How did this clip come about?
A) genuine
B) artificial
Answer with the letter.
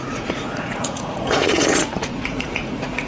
B